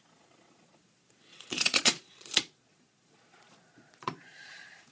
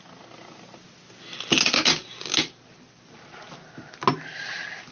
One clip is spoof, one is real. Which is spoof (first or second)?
first